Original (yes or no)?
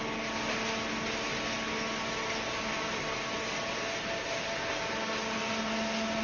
yes